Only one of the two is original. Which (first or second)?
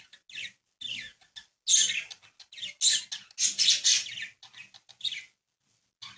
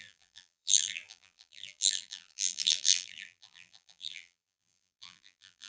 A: first